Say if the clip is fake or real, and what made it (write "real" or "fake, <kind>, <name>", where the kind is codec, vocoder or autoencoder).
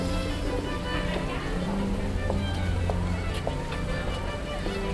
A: real